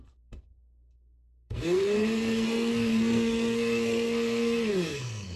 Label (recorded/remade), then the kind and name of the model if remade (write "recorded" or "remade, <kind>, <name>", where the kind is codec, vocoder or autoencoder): remade, codec, SNAC